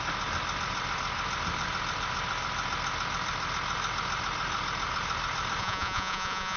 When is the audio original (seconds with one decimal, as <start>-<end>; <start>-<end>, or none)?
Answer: 0.0-5.6